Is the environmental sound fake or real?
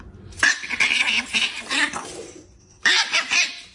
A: fake